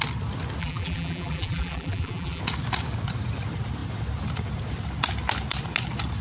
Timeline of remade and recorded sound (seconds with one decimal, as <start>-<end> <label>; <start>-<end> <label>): 0.0-0.6 recorded; 0.6-2.4 remade; 2.4-6.2 recorded